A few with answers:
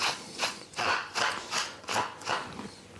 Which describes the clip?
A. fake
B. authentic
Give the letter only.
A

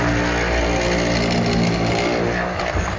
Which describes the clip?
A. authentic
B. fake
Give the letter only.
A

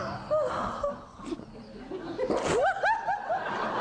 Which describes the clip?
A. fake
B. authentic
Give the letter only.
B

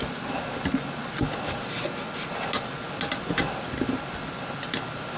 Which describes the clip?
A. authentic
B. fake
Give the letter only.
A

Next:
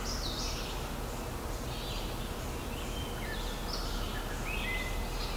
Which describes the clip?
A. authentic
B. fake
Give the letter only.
A